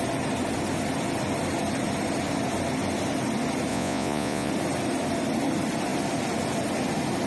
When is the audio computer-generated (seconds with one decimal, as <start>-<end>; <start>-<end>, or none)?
3.7-4.5

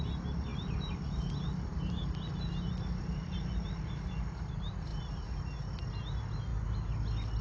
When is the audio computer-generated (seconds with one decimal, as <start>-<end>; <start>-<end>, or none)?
0.5-4.5

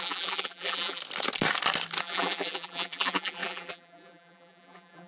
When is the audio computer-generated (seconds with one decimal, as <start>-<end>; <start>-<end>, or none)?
0.0-1.0; 2.0-5.1

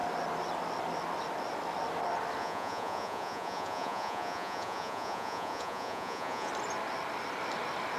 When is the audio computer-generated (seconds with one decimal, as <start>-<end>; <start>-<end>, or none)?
2.4-6.5

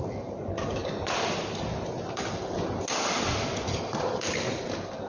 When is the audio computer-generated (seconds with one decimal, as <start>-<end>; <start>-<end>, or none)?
none

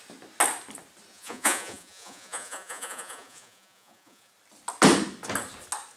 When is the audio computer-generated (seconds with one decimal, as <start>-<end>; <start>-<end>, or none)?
1.1-4.3